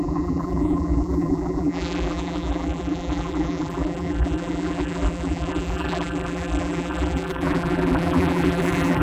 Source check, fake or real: fake